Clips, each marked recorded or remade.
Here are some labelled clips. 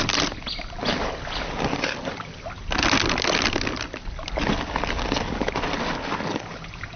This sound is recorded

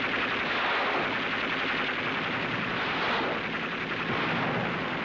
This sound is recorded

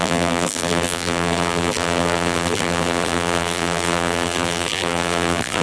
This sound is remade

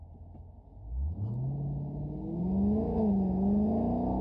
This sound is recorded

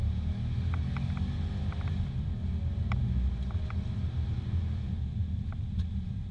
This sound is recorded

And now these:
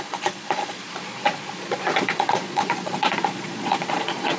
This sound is remade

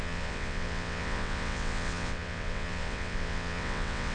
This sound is remade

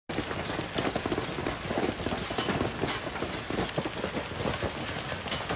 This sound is recorded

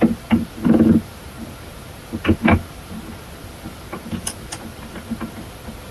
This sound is recorded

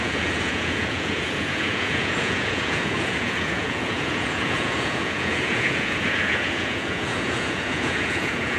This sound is remade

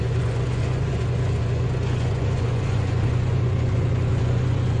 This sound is remade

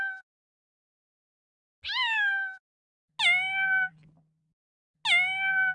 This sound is recorded